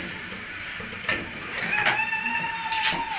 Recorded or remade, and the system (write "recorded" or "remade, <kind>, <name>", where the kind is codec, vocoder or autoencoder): remade, vocoder, BigVGAN v2